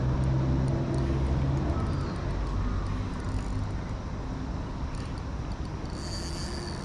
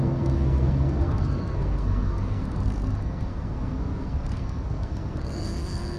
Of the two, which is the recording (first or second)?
first